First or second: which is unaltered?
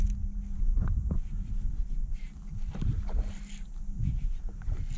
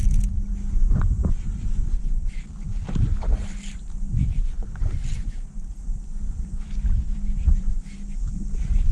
first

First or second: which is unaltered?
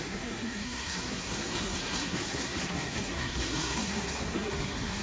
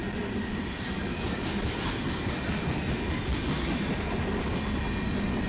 second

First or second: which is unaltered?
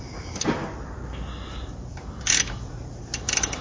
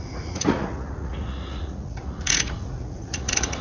first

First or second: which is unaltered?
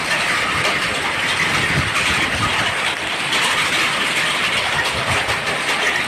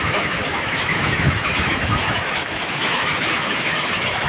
first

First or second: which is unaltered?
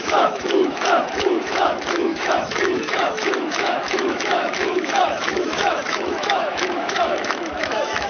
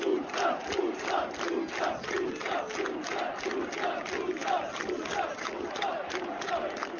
second